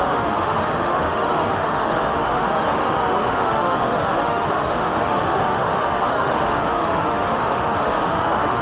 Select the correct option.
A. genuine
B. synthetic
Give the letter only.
B